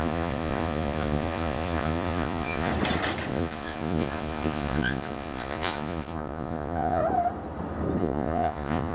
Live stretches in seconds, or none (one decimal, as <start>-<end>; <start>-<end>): 2.7-3.3; 7.0-8.0

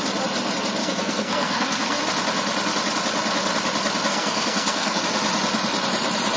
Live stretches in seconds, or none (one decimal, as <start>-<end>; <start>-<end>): 0.0-0.8; 2.0-4.1; 5.0-6.4

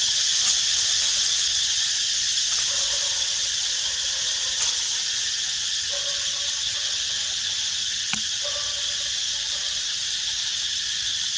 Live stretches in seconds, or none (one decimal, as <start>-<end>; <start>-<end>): 0.0-11.4

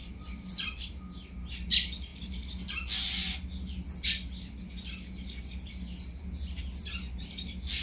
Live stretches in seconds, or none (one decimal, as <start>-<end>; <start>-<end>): 0.9-7.8